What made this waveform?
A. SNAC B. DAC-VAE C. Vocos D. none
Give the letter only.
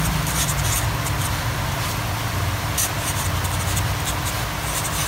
D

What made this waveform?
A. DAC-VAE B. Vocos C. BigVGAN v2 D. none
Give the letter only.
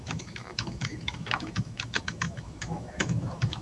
A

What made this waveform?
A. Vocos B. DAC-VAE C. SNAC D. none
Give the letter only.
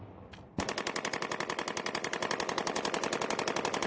D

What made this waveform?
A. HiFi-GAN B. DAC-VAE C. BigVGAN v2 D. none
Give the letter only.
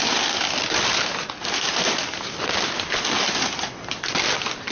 D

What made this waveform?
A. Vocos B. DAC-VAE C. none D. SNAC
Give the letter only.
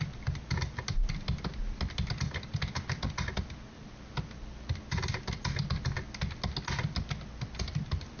C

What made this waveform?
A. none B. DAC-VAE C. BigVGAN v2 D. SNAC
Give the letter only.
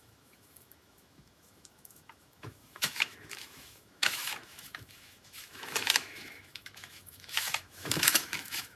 B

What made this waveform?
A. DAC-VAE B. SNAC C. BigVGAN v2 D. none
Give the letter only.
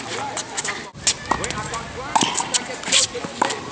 D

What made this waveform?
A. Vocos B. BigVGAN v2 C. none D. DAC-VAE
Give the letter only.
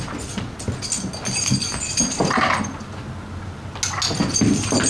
C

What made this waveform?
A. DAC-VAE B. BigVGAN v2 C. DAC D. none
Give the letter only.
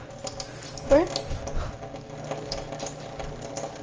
D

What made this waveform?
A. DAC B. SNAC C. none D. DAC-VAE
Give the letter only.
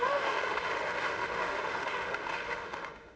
D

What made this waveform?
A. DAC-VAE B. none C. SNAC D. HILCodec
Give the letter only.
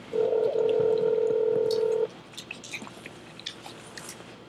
B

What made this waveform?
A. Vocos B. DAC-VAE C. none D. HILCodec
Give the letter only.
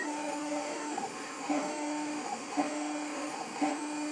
B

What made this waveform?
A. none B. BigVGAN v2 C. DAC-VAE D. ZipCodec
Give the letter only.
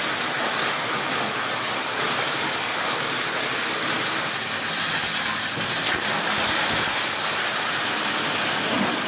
A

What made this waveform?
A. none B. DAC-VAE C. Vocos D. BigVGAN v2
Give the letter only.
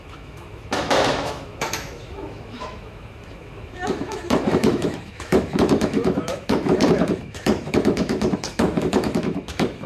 B